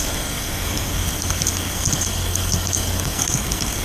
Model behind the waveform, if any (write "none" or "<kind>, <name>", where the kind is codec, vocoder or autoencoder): codec, SNAC